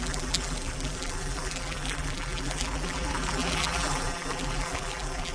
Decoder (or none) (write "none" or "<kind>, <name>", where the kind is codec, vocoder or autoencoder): vocoder, BigVGAN v2